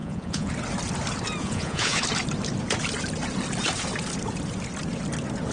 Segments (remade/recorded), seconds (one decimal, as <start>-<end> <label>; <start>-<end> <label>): 0.0-0.5 remade; 0.5-1.4 recorded; 1.4-2.0 remade; 2.0-5.5 recorded